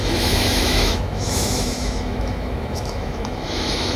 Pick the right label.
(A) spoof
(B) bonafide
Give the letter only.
A